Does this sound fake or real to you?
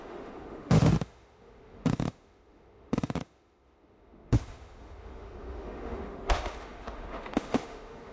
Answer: fake